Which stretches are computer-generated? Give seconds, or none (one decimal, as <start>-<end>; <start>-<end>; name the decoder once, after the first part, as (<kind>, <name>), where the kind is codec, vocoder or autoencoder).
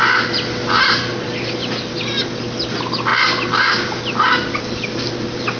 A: none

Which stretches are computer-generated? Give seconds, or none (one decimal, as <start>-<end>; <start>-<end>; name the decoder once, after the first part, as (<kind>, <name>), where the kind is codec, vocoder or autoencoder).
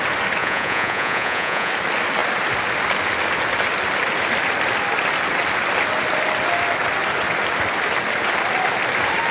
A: 0.4-1.7 (vocoder, Vocos)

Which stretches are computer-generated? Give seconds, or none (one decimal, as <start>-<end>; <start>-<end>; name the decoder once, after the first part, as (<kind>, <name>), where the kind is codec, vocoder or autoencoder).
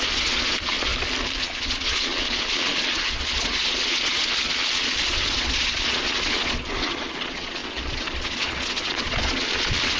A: 0.0-0.9 (vocoder, Vocos); 1.4-10.0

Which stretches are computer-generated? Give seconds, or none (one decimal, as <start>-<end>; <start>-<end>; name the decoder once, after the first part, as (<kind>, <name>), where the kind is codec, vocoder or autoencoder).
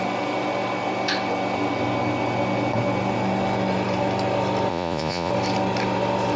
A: 4.7-5.3 (vocoder, Vocos)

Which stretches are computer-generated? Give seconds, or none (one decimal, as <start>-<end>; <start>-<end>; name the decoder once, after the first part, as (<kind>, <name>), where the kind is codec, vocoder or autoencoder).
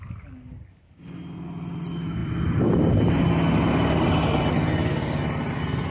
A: none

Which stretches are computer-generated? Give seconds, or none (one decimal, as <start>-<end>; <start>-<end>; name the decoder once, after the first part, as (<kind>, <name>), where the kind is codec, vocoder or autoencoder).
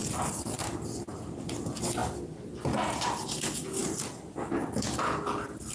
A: none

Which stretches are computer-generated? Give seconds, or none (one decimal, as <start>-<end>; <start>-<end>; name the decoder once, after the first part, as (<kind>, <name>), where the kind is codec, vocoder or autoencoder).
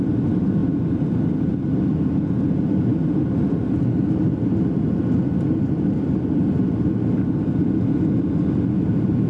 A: none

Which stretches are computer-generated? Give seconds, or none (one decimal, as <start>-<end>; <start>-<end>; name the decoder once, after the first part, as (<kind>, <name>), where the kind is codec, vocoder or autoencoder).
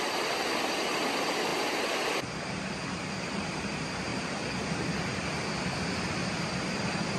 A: none